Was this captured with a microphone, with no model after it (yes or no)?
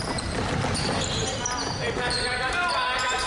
yes